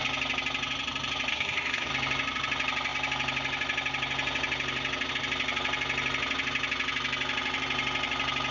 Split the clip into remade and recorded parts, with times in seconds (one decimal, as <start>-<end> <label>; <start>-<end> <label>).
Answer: 0.0-1.3 recorded; 1.3-1.9 remade; 1.9-8.5 recorded